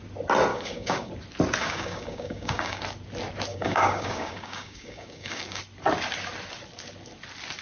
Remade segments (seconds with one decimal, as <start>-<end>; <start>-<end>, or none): 0.5-1.1; 1.6-2.8; 3.5-5.6